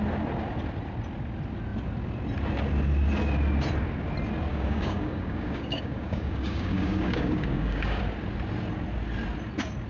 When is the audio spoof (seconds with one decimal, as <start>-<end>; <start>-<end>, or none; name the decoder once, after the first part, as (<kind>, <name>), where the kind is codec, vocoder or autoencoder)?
4.5-8.0 (codec, DAC)